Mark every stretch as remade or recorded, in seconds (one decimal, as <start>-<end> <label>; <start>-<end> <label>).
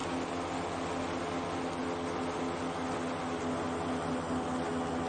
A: 0.0-5.1 recorded